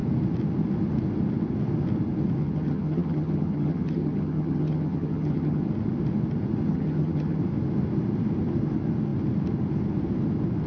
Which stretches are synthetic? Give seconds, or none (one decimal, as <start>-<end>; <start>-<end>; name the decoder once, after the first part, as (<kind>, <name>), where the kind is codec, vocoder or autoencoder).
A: 2.4-5.6 (vocoder, HiFi-GAN); 6.7-7.4